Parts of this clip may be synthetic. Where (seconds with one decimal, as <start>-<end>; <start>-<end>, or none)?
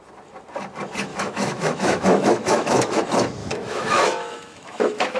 1.1-3.0; 3.4-5.2